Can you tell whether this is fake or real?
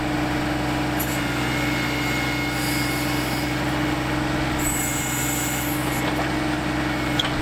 real